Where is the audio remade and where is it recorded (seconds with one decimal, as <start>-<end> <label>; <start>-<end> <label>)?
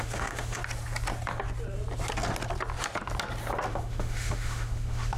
0.0-0.6 remade; 0.6-3.7 recorded; 3.7-5.2 remade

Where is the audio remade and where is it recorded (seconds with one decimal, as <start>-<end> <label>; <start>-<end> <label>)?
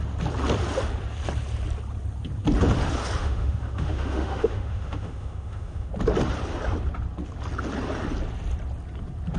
0.0-3.2 recorded; 3.2-5.9 remade; 5.9-9.4 recorded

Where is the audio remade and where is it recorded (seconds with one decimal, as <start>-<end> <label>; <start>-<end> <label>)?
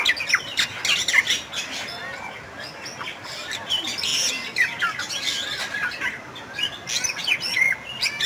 0.0-8.3 recorded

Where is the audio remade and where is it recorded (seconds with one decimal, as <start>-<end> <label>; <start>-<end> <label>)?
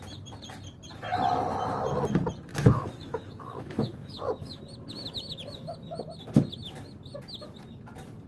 0.0-2.5 recorded; 2.5-4.6 remade; 4.6-8.3 recorded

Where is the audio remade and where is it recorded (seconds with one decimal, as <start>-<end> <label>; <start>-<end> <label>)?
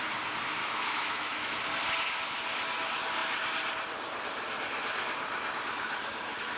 0.0-0.6 recorded; 0.6-1.5 remade; 1.5-6.6 recorded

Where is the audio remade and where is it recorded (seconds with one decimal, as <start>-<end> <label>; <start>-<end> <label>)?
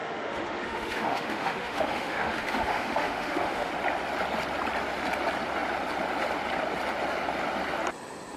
0.0-3.7 remade; 3.7-8.4 recorded